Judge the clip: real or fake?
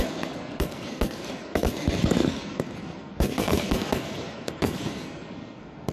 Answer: fake